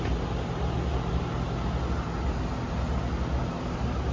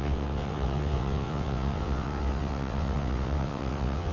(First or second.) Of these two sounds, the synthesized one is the second